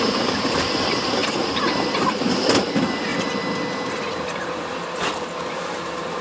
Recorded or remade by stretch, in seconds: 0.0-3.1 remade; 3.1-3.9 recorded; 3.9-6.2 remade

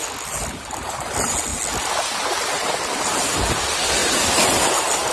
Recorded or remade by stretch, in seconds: 0.0-5.1 recorded

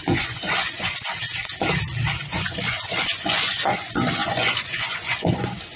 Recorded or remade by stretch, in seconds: 0.0-1.6 remade; 1.6-2.3 recorded; 2.3-5.8 remade

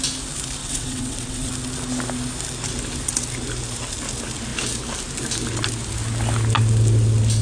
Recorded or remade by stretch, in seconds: 0.0-0.6 recorded; 0.6-1.5 remade; 1.5-7.4 recorded

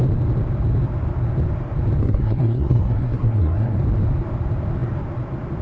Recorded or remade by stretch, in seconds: 0.0-2.0 recorded; 2.0-3.8 remade; 3.8-5.6 recorded

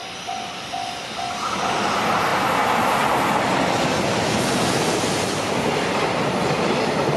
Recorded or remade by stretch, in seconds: 0.0-7.2 recorded

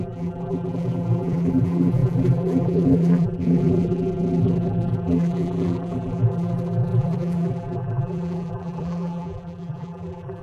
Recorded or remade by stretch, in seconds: 0.0-10.4 remade